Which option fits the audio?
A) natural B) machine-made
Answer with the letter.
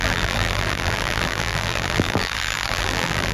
B